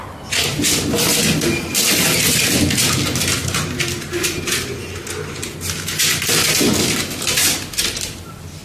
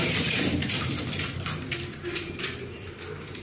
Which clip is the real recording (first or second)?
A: first